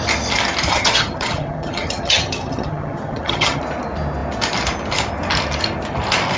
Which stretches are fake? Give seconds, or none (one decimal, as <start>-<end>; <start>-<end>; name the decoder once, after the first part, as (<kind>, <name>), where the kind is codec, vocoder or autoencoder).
0.7-3.6 (vocoder, HiFi-GAN)